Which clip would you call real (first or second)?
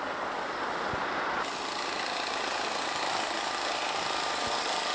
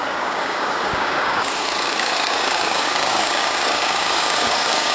first